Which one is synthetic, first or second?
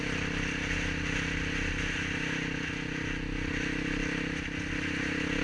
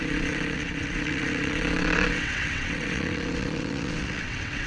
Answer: second